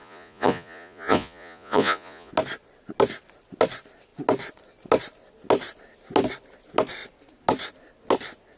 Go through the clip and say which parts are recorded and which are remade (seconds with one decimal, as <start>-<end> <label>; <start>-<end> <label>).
0.0-2.3 remade; 2.3-8.6 recorded